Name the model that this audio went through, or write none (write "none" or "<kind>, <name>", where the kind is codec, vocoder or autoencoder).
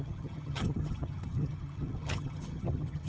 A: vocoder, HiFi-GAN